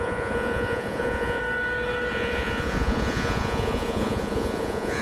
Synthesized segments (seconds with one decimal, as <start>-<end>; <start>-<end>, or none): 0.0-1.4; 2.1-5.0